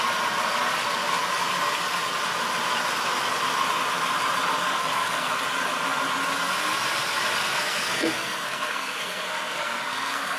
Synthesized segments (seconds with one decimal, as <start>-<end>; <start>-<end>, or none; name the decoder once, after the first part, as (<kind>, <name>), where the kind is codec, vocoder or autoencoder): 4.6-5.4 (codec, SNAC); 7.4-10.4